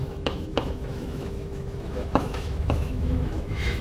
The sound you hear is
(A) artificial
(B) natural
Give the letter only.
A